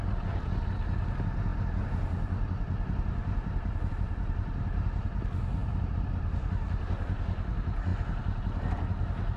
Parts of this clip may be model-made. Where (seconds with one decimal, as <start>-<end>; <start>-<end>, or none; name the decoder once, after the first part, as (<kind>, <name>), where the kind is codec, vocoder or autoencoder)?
none